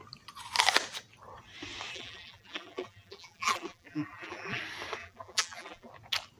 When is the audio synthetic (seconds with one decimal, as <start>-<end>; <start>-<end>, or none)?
1.9-4.6; 5.0-5.9